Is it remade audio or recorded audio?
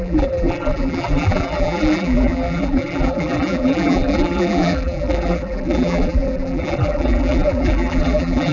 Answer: remade